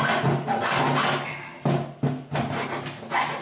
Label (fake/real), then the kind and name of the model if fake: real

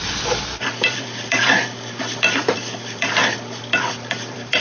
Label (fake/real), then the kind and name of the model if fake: fake, vocoder, BigVGAN v2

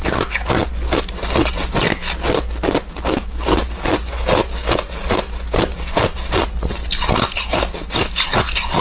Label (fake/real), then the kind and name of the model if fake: real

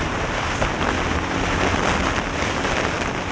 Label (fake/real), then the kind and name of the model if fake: real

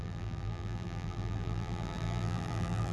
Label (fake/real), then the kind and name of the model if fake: fake, vocoder, BigVGAN v2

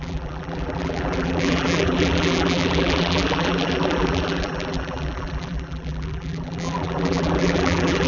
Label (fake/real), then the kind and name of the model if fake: fake, vocoder, BigVGAN v2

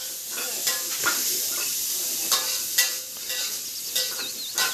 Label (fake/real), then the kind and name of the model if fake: real